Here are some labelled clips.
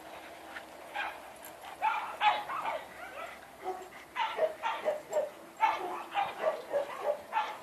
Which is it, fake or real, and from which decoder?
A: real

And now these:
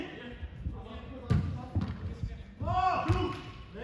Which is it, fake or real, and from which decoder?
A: real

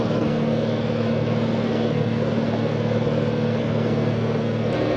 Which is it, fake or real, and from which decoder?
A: fake, codec, SNAC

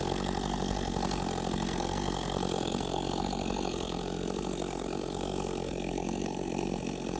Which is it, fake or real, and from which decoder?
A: fake, codec, SNAC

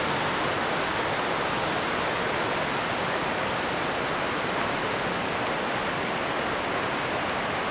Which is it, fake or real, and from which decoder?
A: real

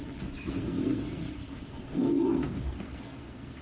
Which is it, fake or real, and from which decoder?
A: fake, codec, SNAC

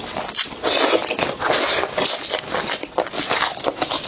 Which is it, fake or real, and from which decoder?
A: real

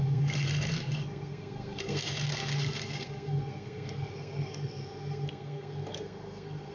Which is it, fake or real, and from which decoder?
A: fake, codec, SNAC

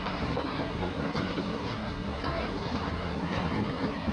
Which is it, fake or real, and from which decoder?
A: fake, codec, SNAC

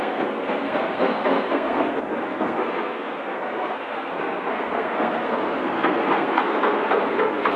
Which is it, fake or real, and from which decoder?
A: fake, codec, SNAC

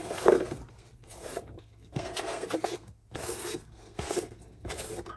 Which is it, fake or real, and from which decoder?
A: fake, codec, SNAC